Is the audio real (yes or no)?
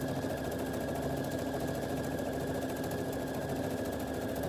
yes